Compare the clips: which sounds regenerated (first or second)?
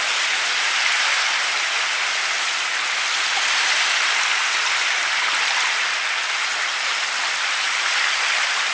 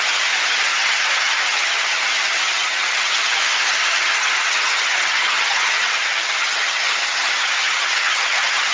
second